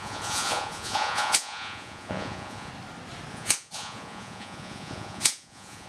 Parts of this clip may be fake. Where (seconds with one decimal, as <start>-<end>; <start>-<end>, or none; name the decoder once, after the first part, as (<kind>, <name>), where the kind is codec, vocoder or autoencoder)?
0.0-2.7 (vocoder, Vocos); 3.3-5.9